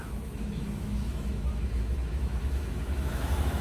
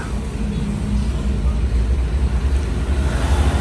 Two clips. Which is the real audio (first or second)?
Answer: second